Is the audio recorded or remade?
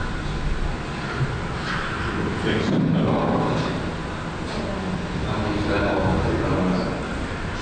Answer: recorded